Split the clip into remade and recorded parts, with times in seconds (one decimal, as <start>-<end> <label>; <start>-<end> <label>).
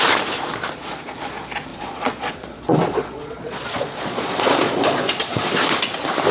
0.0-1.7 recorded; 1.7-5.5 remade; 5.5-6.3 recorded